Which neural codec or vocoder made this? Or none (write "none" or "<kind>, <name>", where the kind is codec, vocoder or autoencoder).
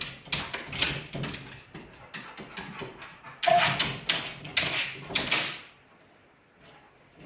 none